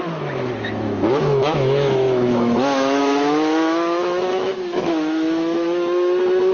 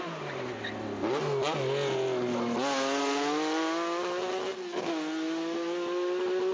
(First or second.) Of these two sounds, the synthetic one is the first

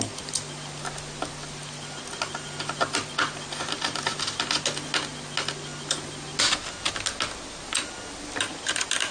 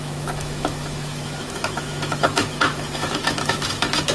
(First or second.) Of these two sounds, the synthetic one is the second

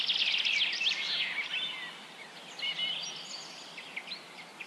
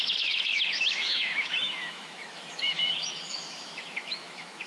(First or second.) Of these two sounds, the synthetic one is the second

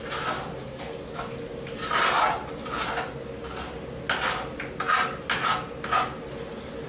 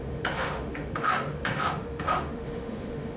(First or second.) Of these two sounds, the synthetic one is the second